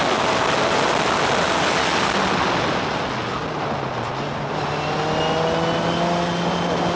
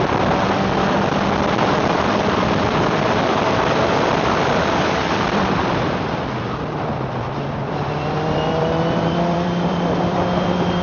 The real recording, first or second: first